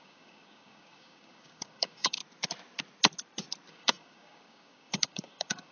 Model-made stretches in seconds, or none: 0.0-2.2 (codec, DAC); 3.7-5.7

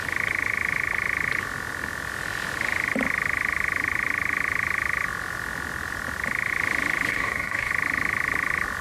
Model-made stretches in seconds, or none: 7.1-7.7 (codec, DAC)

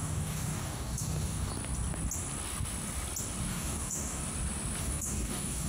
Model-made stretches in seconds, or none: 0.0-1.5 (codec, DAC); 3.5-4.2; 4.8-5.7

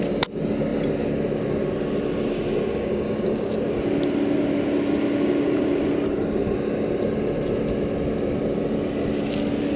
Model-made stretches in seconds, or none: 2.7-3.5 (codec, DAC)

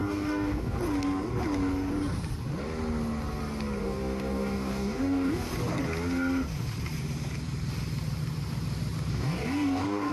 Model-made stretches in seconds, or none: 0.0-0.8 (codec, DAC); 3.8-5.5; 9.1-10.1

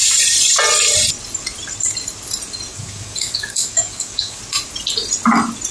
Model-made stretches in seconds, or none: 2.7-4.4 (codec, DAC)

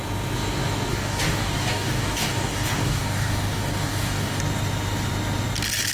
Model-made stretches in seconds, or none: 0.9-4.4 (codec, DAC)